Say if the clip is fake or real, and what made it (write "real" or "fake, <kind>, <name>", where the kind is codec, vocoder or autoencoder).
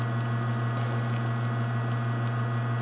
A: real